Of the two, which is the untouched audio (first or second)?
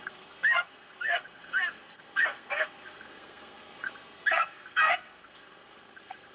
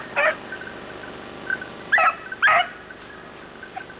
second